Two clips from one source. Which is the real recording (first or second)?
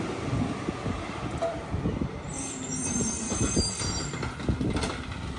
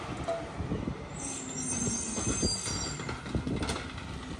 second